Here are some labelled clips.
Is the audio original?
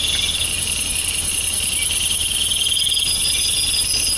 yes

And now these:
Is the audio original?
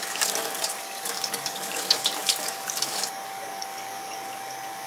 no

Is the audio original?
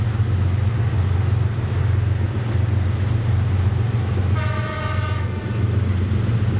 yes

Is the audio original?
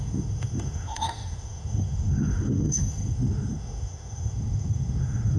no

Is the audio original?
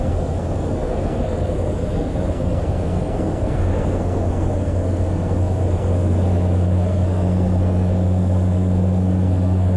no